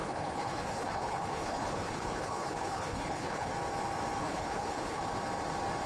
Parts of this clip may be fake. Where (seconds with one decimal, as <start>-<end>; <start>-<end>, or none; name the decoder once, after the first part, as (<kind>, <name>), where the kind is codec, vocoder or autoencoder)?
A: 0.0-3.5 (codec, HILCodec); 4.2-5.0